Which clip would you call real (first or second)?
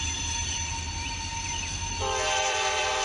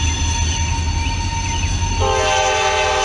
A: second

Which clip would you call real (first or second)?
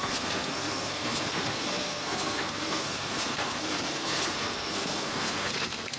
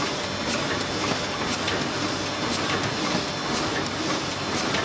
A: second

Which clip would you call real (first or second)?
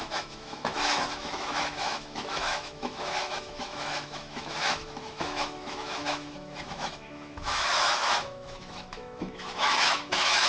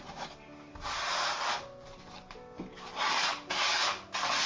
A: second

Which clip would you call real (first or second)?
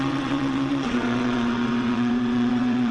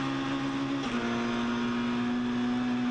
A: second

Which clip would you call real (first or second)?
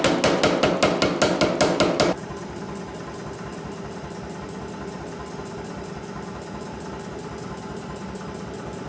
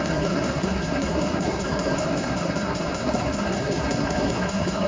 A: first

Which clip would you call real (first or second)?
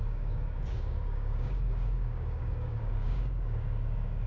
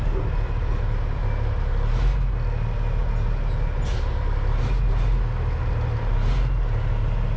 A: second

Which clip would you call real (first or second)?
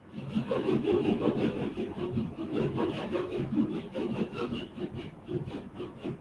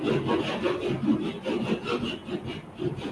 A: second